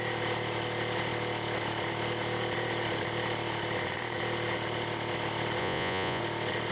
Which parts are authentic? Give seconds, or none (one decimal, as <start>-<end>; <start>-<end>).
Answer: 0.0-5.6; 6.2-6.7